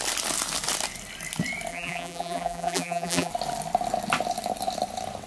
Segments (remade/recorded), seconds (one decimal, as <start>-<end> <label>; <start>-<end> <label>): 0.0-1.7 recorded; 1.7-3.3 remade; 3.3-5.3 recorded